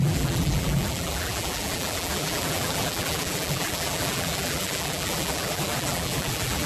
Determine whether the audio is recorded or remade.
remade